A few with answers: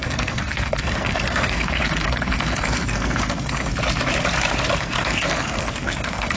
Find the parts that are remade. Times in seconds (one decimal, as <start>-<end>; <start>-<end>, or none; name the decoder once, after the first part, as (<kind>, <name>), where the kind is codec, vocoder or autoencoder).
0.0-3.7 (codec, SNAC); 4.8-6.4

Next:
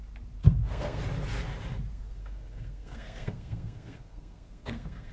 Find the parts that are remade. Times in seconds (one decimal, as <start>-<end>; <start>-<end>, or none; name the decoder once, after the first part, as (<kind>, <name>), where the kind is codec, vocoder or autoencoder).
0.4-1.0 (codec, SNAC); 1.9-5.1

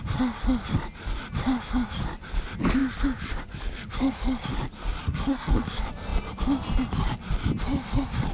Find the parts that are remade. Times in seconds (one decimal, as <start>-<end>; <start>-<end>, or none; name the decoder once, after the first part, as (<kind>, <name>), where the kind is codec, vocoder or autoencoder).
5.0-5.6 (codec, SNAC)

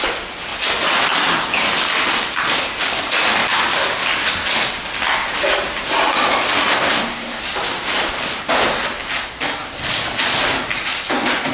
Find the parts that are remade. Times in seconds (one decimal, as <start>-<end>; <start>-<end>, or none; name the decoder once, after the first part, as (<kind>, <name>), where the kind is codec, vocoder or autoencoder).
6.7-7.4 (codec, SNAC)

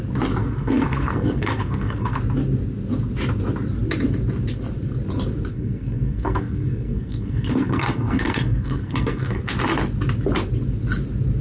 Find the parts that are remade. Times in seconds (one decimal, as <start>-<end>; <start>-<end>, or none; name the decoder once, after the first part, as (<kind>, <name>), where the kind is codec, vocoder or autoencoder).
0.4-2.2 (codec, SNAC); 5.5-9.4

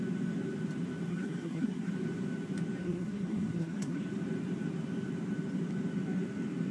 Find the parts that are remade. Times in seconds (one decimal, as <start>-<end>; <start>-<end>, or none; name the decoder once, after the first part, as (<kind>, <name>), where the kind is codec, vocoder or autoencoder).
1.1-1.9 (codec, SNAC); 2.8-4.0

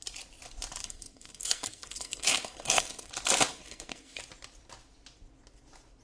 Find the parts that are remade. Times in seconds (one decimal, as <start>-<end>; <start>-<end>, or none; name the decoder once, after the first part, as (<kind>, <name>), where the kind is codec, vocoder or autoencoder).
0.8-3.1 (codec, SNAC); 3.5-4.2

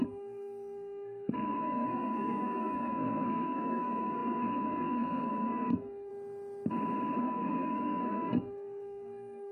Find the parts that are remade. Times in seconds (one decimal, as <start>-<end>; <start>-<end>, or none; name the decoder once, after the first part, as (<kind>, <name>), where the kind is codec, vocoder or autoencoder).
0.0-6.1 (codec, SNAC); 7.2-9.5